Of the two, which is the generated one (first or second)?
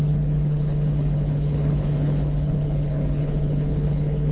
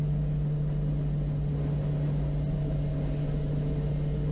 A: first